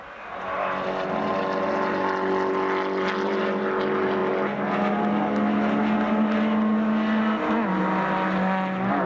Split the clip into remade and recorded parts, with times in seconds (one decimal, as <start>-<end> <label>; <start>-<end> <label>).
0.0-9.1 recorded